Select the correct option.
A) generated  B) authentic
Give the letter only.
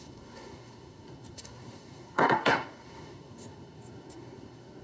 A